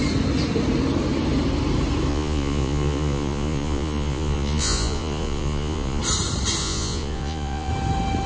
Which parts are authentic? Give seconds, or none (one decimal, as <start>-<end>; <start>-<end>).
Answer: 0.0-2.1; 6.0-6.6; 7.7-8.3